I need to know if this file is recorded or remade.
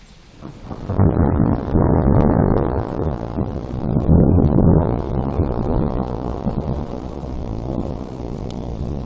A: remade